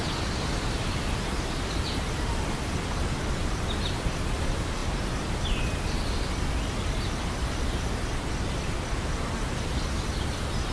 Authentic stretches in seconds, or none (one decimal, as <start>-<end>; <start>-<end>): 0.0-10.7